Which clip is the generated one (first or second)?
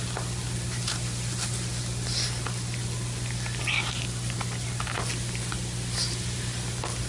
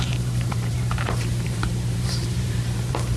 second